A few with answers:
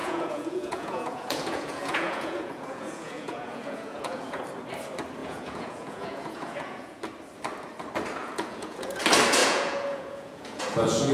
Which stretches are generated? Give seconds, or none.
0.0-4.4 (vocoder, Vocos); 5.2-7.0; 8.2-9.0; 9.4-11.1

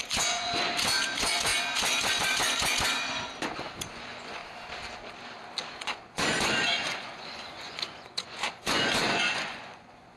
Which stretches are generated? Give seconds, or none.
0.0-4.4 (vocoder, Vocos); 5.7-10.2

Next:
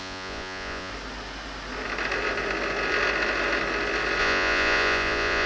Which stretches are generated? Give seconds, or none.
0.0-0.9 (vocoder, Vocos); 4.2-5.5

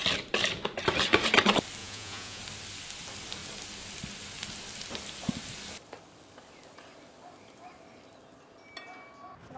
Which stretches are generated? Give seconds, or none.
1.8-2.4 (vocoder, Vocos)

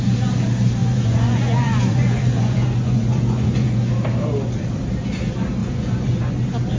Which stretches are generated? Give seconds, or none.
0.8-3.9 (vocoder, Vocos); 5.6-6.3